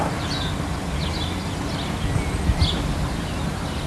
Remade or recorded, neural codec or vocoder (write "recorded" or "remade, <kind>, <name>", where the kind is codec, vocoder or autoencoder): recorded